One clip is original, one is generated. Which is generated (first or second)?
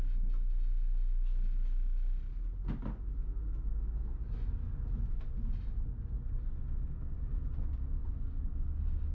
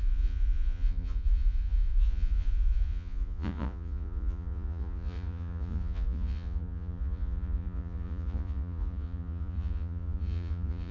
second